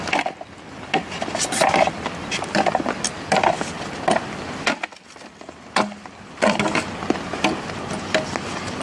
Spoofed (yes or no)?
no